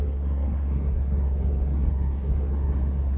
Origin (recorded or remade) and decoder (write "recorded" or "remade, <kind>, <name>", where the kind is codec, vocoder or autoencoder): remade, codec, SNAC